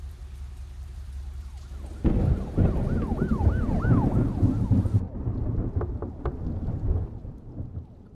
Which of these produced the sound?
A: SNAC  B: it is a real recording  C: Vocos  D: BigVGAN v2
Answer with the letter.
B